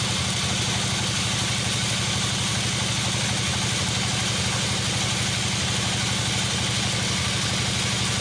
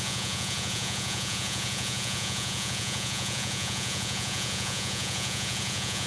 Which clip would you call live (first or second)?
first